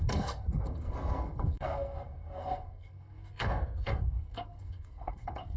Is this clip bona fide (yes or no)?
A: no